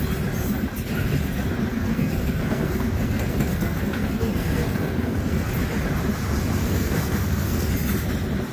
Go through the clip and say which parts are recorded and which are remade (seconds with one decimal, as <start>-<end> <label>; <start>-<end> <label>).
0.0-1.7 recorded; 1.7-5.5 remade; 5.5-6.6 recorded; 6.6-7.7 remade; 7.7-8.5 recorded